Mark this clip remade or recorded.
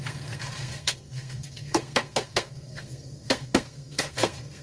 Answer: remade